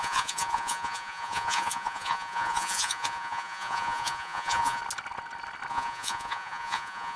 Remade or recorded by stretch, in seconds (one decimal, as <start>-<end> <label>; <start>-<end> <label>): 0.0-4.8 remade; 4.8-5.7 recorded; 5.7-7.2 remade